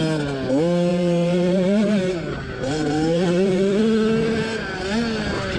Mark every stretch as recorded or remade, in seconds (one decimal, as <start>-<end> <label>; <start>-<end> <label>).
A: 0.0-0.9 recorded; 0.9-3.8 remade; 3.8-5.6 recorded